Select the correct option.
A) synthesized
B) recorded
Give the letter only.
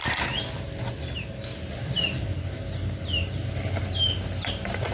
B